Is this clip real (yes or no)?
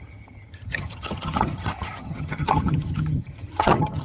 no